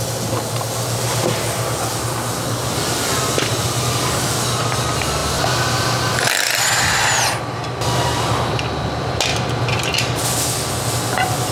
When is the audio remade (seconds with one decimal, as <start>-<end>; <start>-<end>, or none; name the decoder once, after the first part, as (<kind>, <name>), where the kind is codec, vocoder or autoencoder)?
none